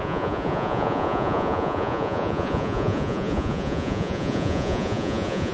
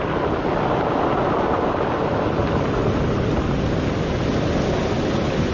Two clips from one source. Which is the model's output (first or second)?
first